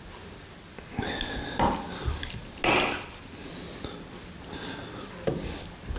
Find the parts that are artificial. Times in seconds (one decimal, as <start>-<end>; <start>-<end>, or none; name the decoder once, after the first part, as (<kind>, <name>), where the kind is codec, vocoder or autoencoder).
none